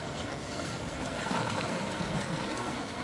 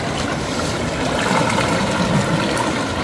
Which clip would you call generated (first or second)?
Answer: first